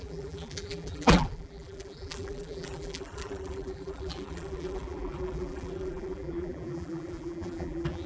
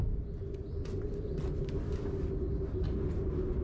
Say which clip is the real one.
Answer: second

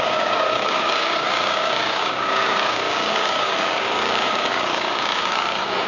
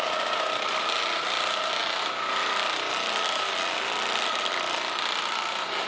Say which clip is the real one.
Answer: second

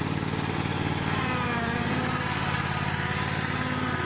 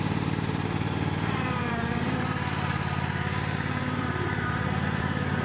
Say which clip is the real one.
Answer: first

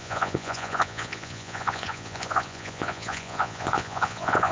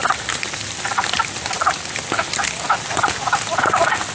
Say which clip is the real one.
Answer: second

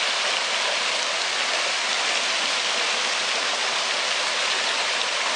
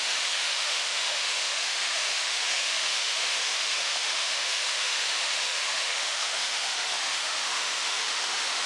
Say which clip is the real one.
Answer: first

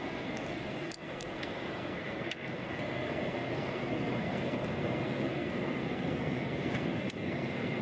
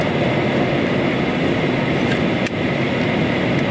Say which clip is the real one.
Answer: second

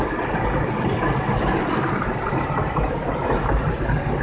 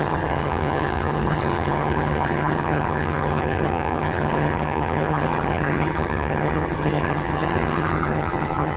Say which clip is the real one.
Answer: first